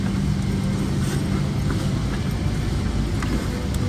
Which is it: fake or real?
real